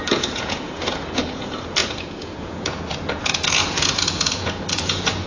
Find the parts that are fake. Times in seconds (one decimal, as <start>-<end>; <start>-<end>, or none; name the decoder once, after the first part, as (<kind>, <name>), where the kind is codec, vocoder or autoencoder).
0.0-5.3 (vocoder, Vocos)